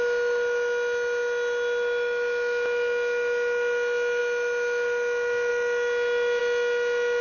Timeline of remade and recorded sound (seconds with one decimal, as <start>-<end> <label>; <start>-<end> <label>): 0.0-7.2 recorded